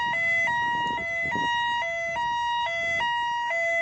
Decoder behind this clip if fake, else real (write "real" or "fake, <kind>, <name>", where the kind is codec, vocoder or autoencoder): real